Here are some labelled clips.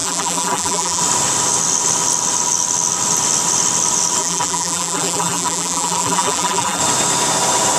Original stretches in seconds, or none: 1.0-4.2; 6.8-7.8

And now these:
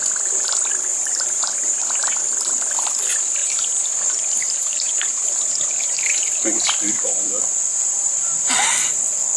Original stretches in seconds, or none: 0.0-0.9; 2.2-3.4; 7.3-7.7; 8.5-9.4

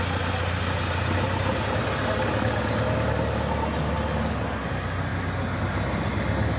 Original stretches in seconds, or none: 0.0-6.6

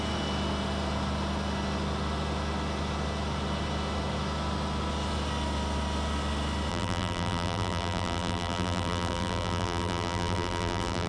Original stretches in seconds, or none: 0.0-6.7

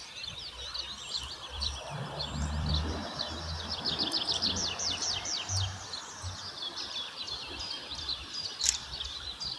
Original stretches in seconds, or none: 3.0-6.5

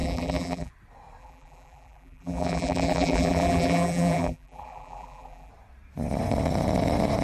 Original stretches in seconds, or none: 0.7-1.2; 5.5-7.2